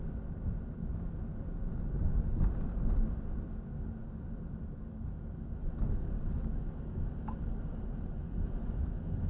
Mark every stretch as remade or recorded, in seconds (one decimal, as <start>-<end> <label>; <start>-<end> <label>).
0.0-9.3 recorded